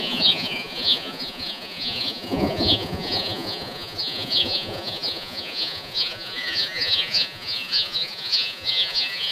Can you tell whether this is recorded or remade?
remade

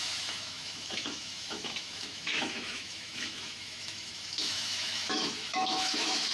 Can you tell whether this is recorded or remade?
remade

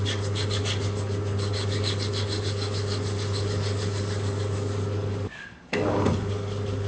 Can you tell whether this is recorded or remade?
remade